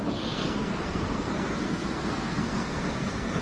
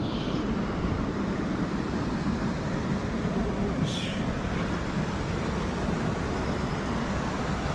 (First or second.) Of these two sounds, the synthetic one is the first